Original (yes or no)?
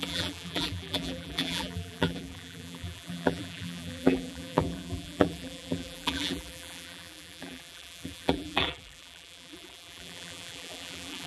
no